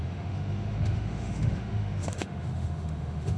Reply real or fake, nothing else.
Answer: fake